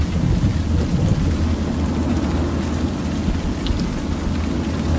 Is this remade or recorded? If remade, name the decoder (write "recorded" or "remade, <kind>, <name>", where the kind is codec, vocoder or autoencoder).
recorded